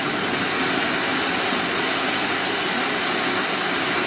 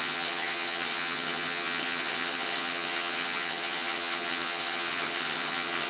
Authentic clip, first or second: first